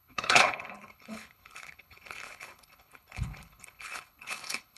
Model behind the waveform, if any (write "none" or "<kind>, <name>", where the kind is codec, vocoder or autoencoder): codec, HILCodec